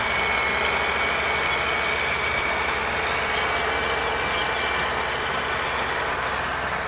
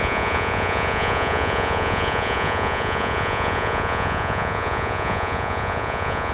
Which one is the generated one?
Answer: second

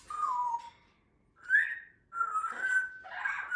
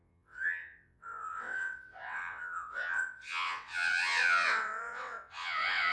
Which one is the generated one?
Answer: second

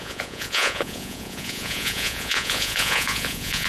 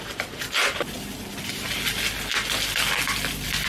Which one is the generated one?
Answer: first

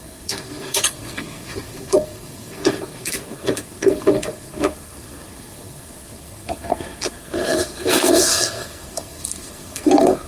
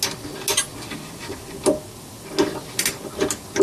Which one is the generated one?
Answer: first